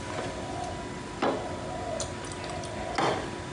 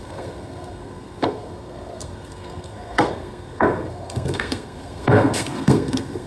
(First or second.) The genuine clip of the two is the first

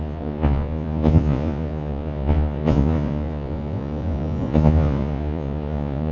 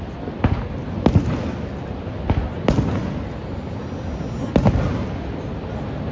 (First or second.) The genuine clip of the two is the second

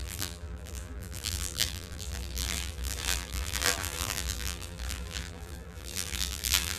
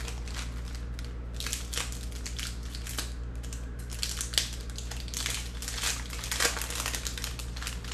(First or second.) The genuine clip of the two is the second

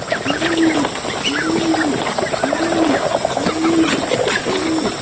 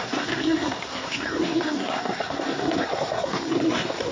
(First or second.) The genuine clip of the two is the first